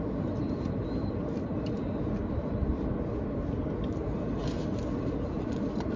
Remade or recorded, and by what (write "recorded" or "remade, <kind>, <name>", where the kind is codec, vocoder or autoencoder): recorded